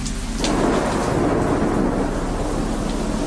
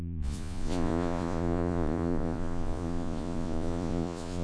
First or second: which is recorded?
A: first